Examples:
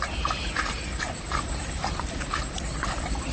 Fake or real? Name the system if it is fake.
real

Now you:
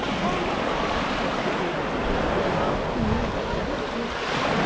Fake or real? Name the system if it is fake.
real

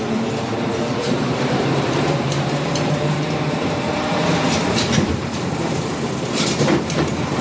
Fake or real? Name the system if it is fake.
fake, vocoder, BigVGAN v2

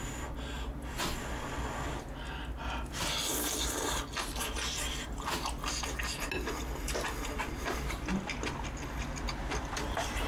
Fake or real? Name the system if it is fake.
real